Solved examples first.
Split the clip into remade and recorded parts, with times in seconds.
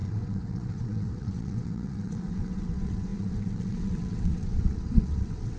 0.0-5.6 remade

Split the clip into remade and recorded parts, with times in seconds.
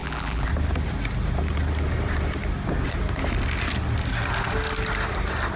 0.0-0.5 remade; 0.5-5.6 recorded